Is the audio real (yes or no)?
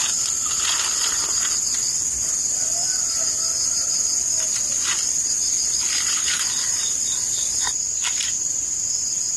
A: yes